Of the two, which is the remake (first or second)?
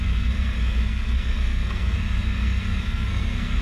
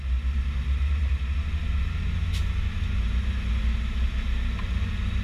first